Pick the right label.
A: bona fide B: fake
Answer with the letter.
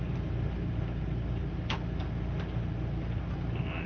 A